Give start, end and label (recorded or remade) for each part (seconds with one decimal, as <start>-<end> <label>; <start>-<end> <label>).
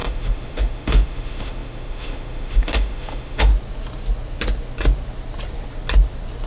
0.0-3.5 remade; 3.5-6.5 recorded